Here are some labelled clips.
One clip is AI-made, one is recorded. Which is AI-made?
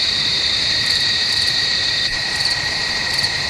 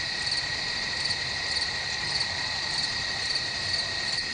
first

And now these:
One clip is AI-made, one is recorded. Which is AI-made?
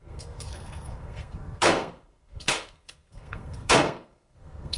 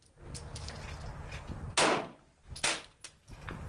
first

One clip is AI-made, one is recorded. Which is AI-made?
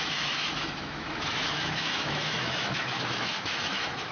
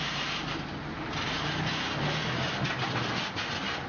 first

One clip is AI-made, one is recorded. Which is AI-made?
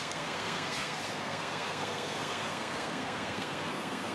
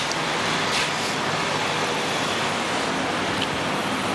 first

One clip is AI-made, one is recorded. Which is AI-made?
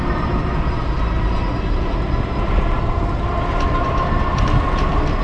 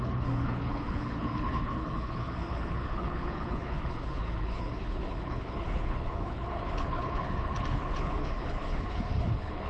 second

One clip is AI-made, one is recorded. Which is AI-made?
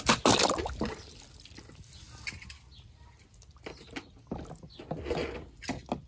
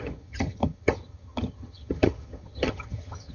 second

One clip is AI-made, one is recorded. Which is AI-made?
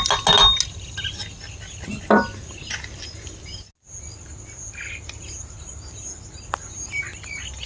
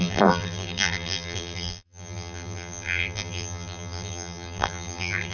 second